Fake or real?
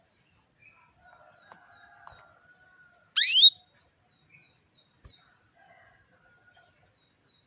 real